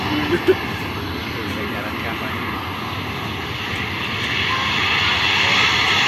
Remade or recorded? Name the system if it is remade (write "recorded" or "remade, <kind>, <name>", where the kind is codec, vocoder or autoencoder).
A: recorded